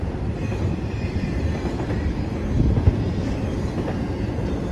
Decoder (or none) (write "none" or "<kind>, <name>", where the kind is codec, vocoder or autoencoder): none